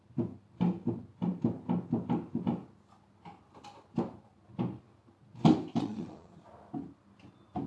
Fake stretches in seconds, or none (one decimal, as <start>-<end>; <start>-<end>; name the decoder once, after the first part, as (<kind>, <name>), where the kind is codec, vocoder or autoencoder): 5.8-6.3 (vocoder, Vocos)